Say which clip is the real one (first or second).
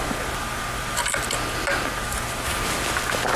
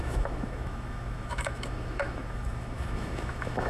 first